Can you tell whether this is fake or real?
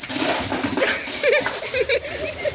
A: real